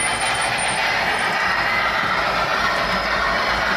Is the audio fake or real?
real